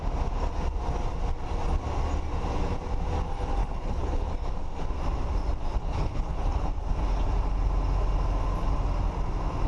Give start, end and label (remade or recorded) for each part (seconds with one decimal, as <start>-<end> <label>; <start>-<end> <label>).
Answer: 0.0-3.6 recorded; 3.6-4.3 remade; 4.3-5.8 recorded; 5.8-6.7 remade; 6.7-9.7 recorded